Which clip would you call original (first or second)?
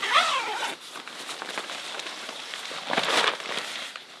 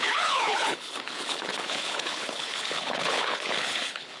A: first